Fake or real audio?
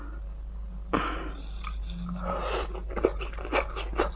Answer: real